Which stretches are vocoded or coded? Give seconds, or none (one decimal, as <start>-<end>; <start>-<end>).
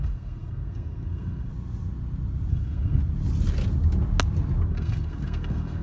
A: 0.0-1.5; 2.5-3.0; 4.7-5.8